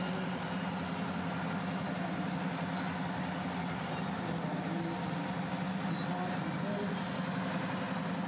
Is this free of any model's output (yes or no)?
yes